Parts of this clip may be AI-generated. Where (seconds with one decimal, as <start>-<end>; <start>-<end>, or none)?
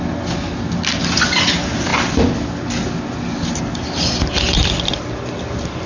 none